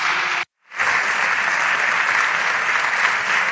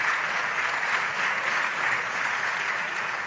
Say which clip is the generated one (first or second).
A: second